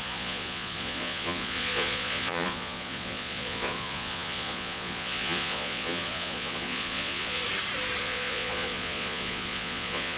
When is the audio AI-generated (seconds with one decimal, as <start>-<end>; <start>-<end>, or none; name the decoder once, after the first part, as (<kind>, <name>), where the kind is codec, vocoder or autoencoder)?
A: 0.0-7.4 (vocoder, Vocos); 8.0-10.2